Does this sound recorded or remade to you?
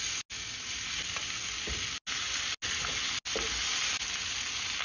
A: recorded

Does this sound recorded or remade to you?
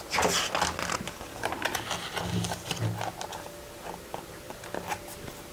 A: recorded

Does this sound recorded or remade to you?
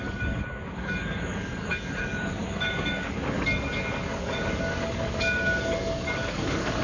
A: remade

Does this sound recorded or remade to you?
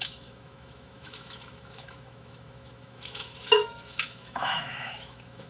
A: remade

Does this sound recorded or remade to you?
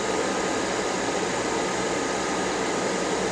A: recorded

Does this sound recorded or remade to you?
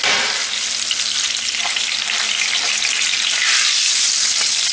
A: recorded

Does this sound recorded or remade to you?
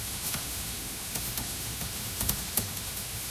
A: remade